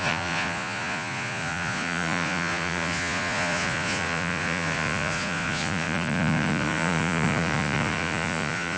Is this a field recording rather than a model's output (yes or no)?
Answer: no